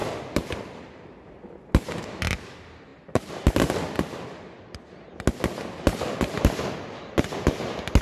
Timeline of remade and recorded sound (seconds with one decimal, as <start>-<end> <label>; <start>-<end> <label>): 0.0-1.1 remade; 1.1-2.9 recorded; 2.9-4.9 remade; 4.9-8.0 recorded